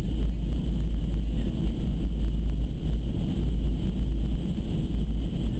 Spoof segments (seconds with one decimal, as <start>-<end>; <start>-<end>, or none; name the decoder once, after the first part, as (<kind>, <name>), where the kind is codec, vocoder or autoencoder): none